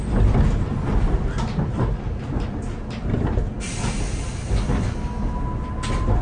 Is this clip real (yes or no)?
yes